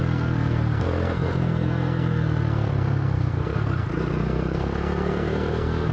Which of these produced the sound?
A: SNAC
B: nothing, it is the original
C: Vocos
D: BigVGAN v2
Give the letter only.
A